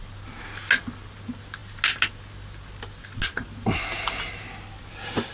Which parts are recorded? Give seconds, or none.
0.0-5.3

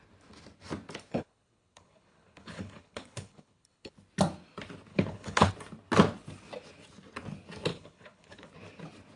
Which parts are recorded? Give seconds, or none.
0.0-1.1; 3.9-4.9; 5.5-7.7; 8.5-9.2